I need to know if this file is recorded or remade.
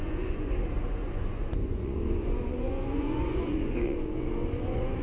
remade